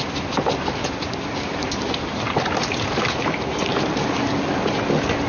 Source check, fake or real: real